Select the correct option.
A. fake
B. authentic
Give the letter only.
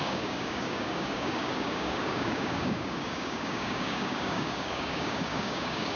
A